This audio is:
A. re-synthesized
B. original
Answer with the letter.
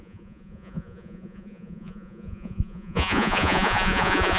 A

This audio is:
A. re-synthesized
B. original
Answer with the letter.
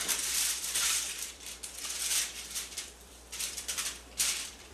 A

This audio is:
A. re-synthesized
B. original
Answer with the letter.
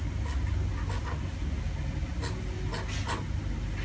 B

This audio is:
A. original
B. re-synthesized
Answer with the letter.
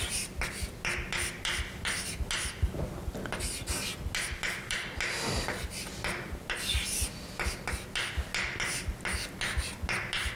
A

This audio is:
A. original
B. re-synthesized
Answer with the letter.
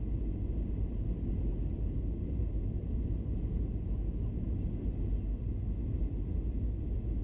A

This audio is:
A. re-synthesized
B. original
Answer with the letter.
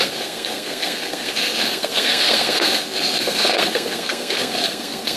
A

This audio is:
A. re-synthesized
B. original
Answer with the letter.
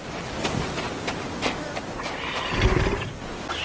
B